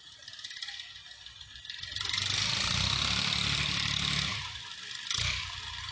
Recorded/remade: remade